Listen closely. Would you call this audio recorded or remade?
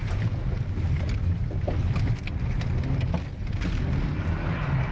recorded